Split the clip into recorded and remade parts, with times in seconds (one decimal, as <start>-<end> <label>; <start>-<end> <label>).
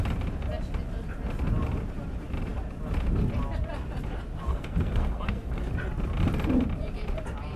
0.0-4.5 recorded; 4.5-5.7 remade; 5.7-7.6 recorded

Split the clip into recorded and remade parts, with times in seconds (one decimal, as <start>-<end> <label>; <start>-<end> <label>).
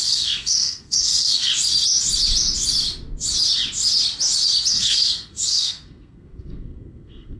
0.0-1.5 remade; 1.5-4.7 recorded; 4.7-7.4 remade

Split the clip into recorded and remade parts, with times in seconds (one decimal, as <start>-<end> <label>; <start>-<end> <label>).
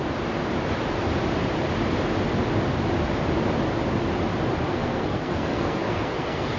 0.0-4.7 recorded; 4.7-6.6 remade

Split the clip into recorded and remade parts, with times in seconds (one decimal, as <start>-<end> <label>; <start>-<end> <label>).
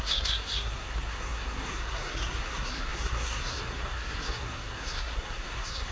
0.0-5.9 remade